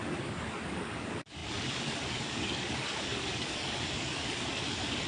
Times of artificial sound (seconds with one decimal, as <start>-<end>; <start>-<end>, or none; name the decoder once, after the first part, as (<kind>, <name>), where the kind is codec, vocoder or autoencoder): 0.0-5.1 (codec, DAC)